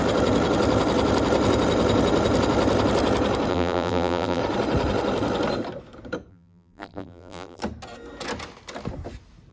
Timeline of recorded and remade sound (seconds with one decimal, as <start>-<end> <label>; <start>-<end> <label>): 0.0-3.5 recorded; 3.5-4.4 remade; 4.4-6.3 recorded; 6.3-7.6 remade; 7.6-9.5 recorded

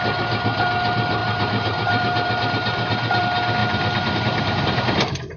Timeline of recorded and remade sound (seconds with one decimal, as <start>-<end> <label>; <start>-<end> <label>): 0.0-1.2 recorded; 1.2-3.2 remade; 3.2-3.6 recorded; 3.6-5.4 remade

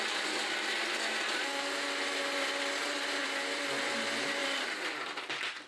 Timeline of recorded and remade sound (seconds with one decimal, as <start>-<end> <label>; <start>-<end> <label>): 0.0-4.4 recorded; 4.4-4.9 remade; 4.9-5.7 recorded

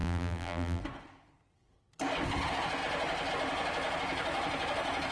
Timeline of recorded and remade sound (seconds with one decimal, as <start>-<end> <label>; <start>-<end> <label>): 0.0-0.8 remade; 0.8-5.1 recorded

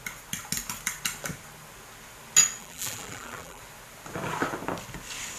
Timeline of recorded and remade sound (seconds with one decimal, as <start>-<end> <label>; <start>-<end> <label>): 0.0-2.6 recorded; 2.6-3.6 remade; 3.6-5.4 recorded

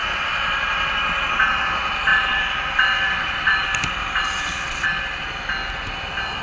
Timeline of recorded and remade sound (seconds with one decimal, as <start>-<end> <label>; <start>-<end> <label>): 0.0-2.1 recorded; 2.1-5.0 remade; 5.0-6.4 recorded

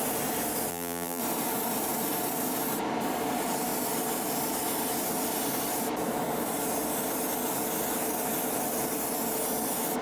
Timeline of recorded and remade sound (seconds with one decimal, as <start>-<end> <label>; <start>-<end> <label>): 0.0-0.7 recorded; 0.7-1.2 remade; 1.2-10.0 recorded

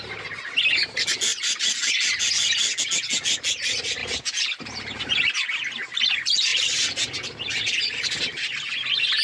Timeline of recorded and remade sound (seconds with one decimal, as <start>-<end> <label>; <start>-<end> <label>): 0.0-1.3 recorded; 1.3-2.2 remade; 2.2-4.0 recorded; 4.0-5.0 remade; 5.0-6.5 recorded; 6.5-7.0 remade; 7.0-9.2 recorded